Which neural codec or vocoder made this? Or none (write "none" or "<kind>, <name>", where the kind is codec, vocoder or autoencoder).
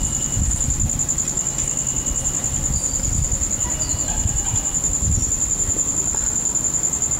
none